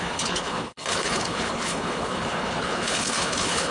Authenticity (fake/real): fake